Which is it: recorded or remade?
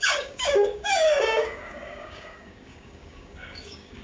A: remade